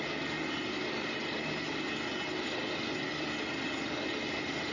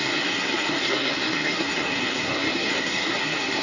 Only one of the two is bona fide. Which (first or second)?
first